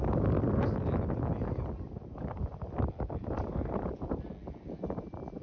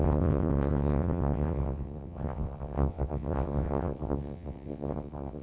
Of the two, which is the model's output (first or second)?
second